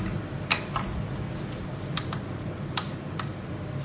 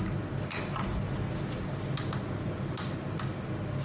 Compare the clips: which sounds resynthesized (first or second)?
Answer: first